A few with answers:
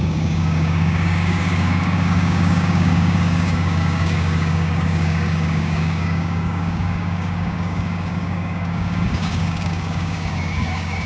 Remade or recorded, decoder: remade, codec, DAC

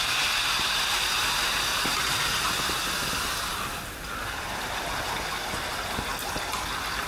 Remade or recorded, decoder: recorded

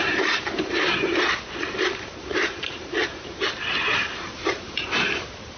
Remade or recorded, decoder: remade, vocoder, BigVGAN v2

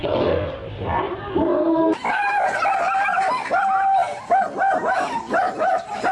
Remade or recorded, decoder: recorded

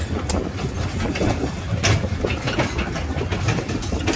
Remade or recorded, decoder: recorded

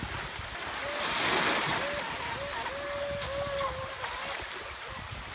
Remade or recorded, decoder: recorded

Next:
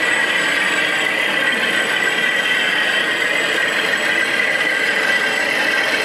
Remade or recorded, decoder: recorded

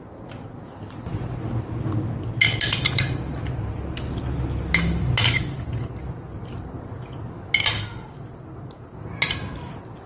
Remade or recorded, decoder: recorded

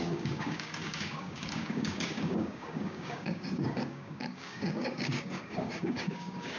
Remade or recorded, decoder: remade, codec, DAC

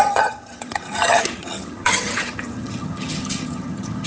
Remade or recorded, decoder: remade, vocoder, HiFi-GAN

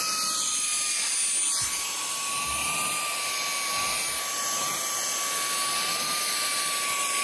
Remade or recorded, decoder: recorded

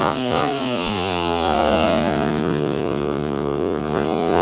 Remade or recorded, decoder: remade, vocoder, Vocos